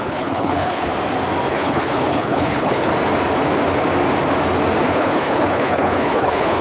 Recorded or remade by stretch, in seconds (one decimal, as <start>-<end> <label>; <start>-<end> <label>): 0.0-0.9 remade; 0.9-1.5 recorded; 1.5-2.9 remade; 2.9-4.9 recorded; 4.9-6.6 remade